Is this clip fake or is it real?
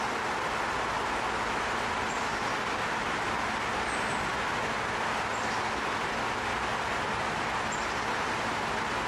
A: real